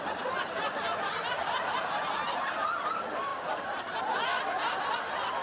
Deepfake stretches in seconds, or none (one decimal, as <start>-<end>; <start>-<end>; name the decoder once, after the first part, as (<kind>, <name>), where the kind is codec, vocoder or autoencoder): 3.3-4.0 (vocoder, BigVGAN v2)